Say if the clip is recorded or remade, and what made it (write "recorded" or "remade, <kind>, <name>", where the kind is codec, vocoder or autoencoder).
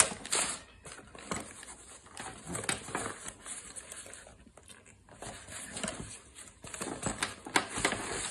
recorded